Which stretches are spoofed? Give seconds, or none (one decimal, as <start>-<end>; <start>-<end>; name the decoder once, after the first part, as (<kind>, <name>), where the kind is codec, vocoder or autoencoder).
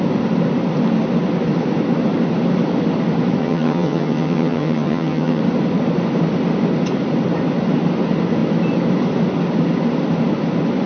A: 3.4-5.4 (vocoder, HiFi-GAN)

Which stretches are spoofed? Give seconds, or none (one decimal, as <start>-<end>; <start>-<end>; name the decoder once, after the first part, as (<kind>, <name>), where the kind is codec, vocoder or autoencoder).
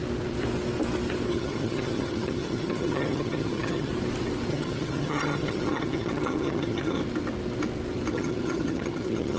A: 1.3-3.9 (vocoder, HiFi-GAN); 4.5-7.0; 8.1-9.4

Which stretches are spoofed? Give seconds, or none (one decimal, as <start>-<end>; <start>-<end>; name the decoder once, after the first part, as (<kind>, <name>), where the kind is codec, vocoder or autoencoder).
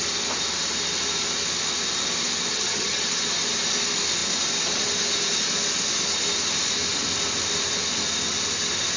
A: 2.5-3.0 (vocoder, HiFi-GAN)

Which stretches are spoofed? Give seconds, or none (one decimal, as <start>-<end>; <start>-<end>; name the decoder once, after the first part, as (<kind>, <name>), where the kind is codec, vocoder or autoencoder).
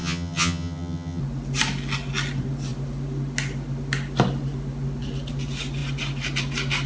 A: 0.0-1.2 (vocoder, HiFi-GAN)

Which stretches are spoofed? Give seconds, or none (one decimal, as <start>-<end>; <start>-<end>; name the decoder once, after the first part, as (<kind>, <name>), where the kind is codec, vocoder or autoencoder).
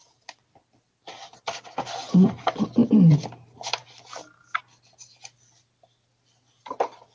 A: none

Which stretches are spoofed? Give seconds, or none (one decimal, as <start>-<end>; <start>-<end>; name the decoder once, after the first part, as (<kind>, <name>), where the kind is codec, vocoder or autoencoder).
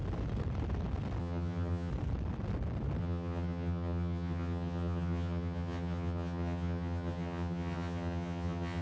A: 1.2-1.9 (vocoder, HiFi-GAN); 3.0-8.8